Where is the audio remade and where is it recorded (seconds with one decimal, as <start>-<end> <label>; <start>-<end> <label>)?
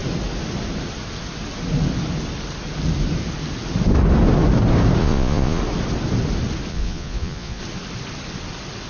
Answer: 0.0-5.0 recorded; 5.0-5.6 remade; 5.6-6.7 recorded; 6.7-7.6 remade; 7.6-8.9 recorded